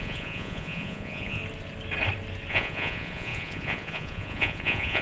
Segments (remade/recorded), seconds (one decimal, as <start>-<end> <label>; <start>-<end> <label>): 0.0-1.4 remade; 1.4-2.5 recorded; 2.5-5.0 remade